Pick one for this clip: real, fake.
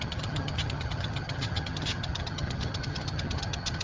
fake